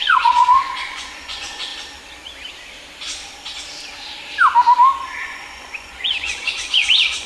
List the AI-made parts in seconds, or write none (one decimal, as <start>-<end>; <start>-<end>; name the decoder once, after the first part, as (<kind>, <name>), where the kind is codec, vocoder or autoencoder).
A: 0.0-1.7 (vocoder, Vocos); 5.1-7.3